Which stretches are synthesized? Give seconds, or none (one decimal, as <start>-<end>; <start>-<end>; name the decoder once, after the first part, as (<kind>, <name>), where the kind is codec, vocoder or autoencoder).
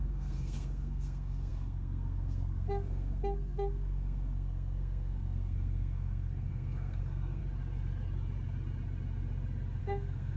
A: 0.0-7.4 (codec, SNAC); 9.8-10.4